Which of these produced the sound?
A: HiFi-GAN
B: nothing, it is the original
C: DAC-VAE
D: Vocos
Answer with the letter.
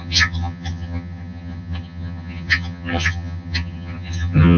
A